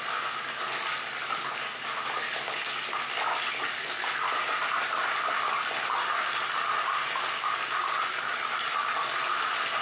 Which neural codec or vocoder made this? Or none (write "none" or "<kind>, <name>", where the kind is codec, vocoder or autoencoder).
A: none